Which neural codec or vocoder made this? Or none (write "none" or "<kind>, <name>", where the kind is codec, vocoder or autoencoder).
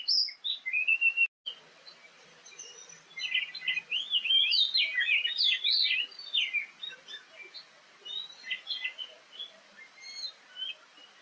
none